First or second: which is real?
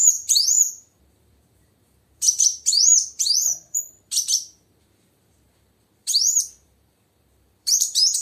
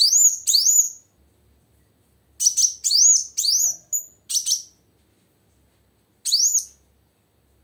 second